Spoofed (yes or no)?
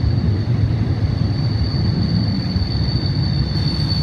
no